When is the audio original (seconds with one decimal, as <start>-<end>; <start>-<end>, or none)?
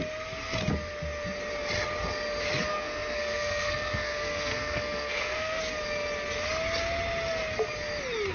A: 0.0-2.7; 5.6-8.3